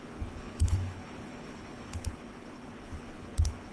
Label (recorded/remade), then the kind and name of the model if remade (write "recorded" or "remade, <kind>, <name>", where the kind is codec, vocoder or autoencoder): remade, codec, HILCodec